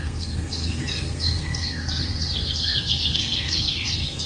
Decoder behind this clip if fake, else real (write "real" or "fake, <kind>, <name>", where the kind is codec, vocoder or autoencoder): fake, codec, SNAC